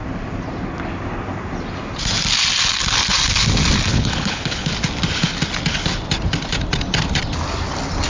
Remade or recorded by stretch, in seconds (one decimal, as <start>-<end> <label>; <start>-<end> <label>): 0.0-3.9 recorded; 3.9-4.7 remade; 4.7-8.1 recorded